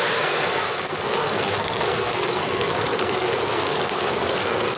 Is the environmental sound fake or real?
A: fake